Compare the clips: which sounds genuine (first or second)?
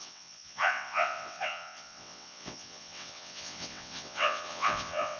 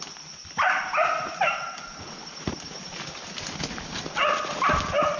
second